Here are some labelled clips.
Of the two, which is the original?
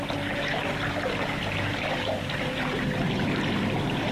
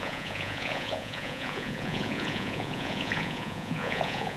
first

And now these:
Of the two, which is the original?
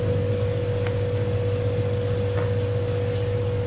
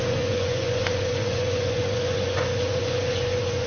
first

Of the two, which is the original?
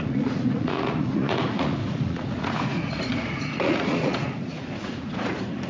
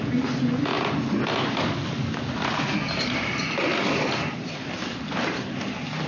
second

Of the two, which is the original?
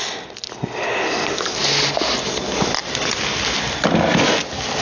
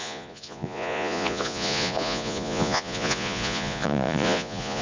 first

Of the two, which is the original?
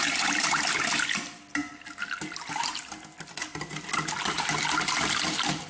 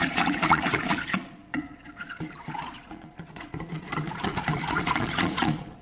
first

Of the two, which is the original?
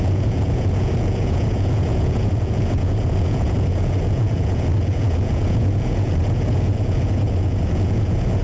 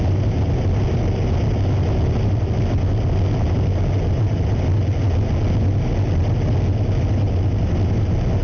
second